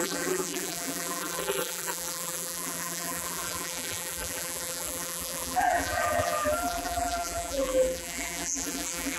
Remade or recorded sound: remade